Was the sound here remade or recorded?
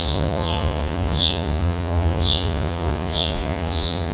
remade